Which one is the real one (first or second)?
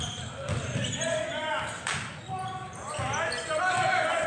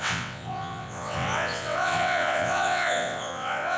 first